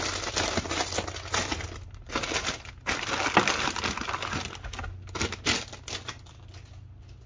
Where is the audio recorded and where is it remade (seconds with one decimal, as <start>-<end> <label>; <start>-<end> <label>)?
0.0-7.3 recorded